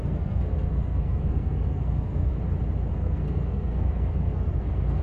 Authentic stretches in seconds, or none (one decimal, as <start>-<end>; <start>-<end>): 2.3-2.9